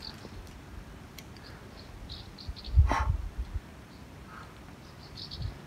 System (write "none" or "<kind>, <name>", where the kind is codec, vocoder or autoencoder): none